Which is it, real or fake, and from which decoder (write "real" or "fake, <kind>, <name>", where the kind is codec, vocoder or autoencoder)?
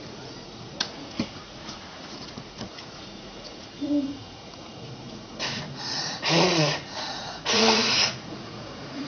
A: fake, vocoder, Vocos